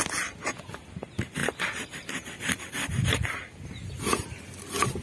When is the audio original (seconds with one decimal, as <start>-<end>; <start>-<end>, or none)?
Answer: 0.0-5.0